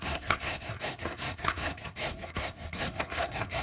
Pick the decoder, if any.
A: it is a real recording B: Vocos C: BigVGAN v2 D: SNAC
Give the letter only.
D